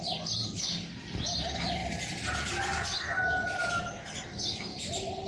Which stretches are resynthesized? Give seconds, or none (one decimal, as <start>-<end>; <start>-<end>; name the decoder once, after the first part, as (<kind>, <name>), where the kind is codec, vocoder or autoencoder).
0.4-1.1 (vocoder, BigVGAN v2); 1.8-2.5; 4.7-5.3